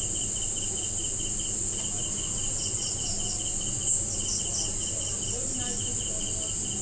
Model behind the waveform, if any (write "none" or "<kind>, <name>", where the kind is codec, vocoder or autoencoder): none